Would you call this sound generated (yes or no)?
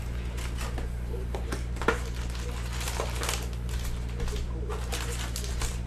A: no